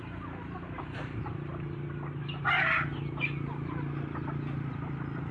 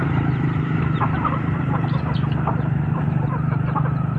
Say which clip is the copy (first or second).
second